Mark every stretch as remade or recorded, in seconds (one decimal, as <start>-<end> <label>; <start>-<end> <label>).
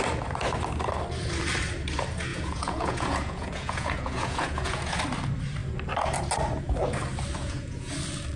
0.0-2.3 recorded; 2.3-5.0 remade; 5.0-7.4 recorded; 7.4-7.9 remade; 7.9-8.4 recorded